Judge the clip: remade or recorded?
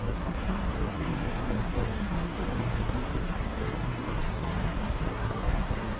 remade